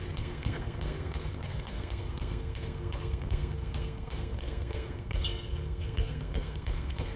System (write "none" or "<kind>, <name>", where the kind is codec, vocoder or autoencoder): codec, SNAC